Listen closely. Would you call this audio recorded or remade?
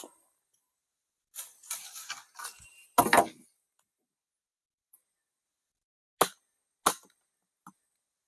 recorded